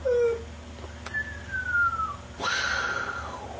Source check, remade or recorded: recorded